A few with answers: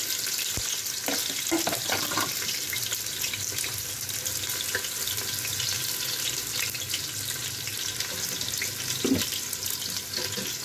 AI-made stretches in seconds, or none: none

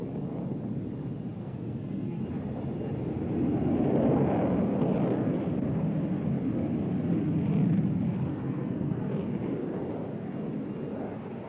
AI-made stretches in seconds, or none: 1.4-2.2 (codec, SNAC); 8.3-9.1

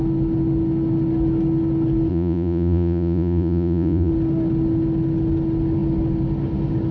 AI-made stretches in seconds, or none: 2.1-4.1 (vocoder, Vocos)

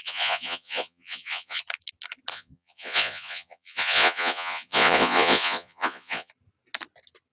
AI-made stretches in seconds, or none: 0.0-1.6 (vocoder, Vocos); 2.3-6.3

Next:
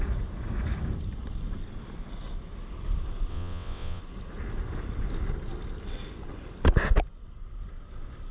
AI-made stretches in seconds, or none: 3.3-4.0 (vocoder, WaveNeXt)

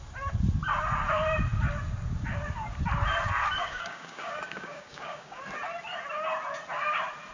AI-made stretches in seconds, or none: 3.6-5.4 (codec, DAC)

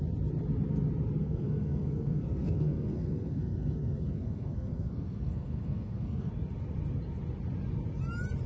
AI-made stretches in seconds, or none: 1.2-6.3 (codec, SNAC)

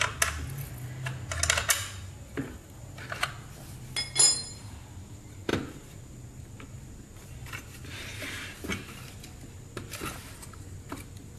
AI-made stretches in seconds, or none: none